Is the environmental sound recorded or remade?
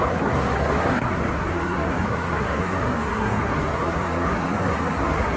remade